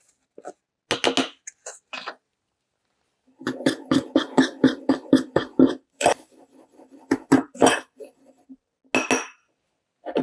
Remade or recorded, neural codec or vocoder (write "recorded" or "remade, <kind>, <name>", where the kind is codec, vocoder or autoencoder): recorded